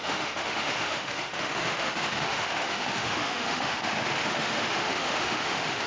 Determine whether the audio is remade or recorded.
remade